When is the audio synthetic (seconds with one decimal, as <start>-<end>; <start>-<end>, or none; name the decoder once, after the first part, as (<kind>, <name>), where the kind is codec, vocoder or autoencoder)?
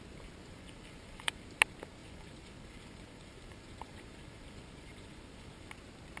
0.4-1.4 (vocoder, Vocos); 2.0-5.7